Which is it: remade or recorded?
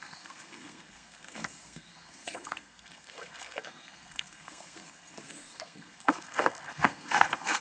remade